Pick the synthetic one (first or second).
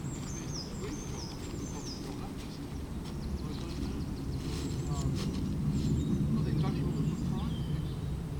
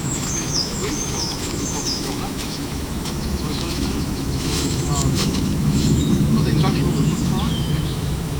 second